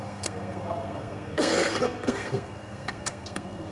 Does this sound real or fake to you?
fake